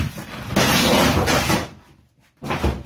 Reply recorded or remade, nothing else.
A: recorded